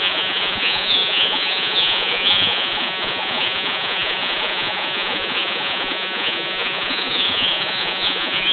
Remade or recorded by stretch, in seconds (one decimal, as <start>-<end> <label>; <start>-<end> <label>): 0.0-8.5 remade